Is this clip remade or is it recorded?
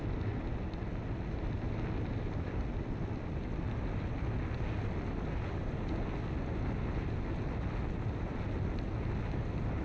recorded